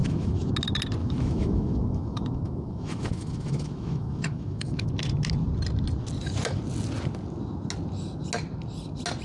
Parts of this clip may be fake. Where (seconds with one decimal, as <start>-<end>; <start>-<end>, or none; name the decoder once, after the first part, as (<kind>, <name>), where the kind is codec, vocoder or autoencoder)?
0.0-0.5 (autoencoder, DAC-VAE); 1.0-4.9